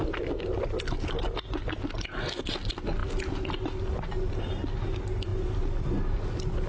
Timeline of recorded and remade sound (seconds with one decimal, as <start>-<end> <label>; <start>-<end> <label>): 0.0-6.7 recorded